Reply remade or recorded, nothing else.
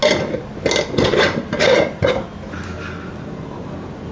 recorded